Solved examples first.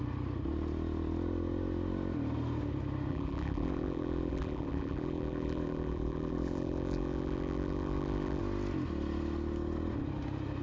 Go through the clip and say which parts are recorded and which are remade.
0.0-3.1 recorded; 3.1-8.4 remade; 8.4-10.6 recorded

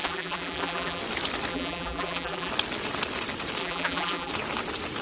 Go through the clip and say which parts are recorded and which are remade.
0.0-1.0 remade; 1.0-1.5 recorded; 1.5-2.5 remade; 2.5-3.6 recorded; 3.6-4.3 remade; 4.3-5.0 recorded